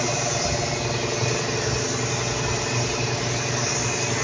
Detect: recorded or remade recorded